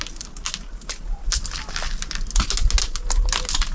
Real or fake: real